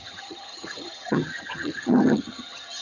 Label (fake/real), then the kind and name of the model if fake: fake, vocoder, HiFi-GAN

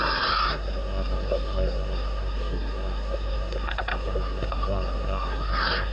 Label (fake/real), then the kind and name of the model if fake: fake, codec, SNAC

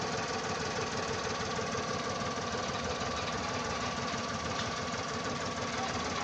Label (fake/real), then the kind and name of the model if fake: real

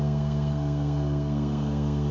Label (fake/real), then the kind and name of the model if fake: fake, codec, SNAC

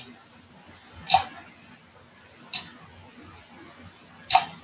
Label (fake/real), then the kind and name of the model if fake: real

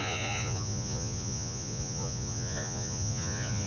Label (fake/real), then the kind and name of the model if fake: fake, vocoder, Vocos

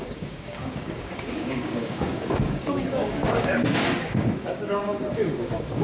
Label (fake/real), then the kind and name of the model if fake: fake, codec, DAC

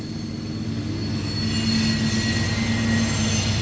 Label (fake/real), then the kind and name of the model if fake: real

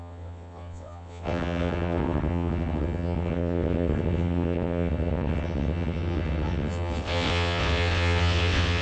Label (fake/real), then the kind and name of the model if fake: fake, vocoder, WaveNeXt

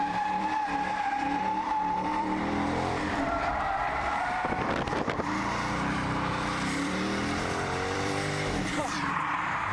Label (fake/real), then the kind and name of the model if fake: fake, vocoder, BigVGAN v2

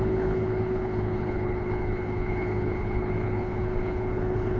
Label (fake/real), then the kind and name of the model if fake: fake, codec, HILCodec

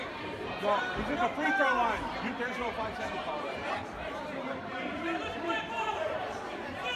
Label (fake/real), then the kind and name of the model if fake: fake, vocoder, BigVGAN v2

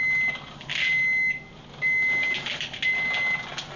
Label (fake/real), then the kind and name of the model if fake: real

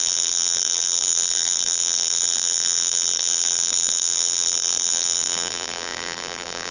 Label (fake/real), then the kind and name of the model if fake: fake, vocoder, BigVGAN v2